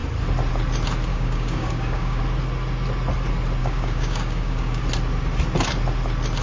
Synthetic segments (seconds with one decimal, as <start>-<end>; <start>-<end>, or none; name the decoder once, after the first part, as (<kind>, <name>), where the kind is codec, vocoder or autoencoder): 1.1-2.2 (codec, DAC); 3.6-4.8